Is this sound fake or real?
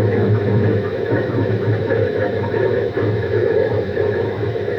fake